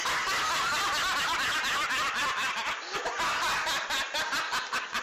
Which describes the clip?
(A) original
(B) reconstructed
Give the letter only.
A